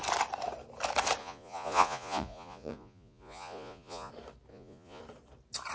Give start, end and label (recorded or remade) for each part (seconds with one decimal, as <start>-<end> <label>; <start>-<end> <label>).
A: 0.0-1.2 recorded; 1.2-4.1 remade; 4.1-4.5 recorded; 4.5-5.0 remade; 5.0-5.7 recorded